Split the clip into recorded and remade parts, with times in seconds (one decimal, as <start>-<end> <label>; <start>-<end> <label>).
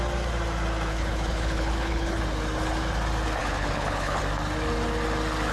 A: 0.0-0.9 recorded; 0.9-2.2 remade; 2.2-3.4 recorded; 3.4-4.2 remade; 4.2-5.5 recorded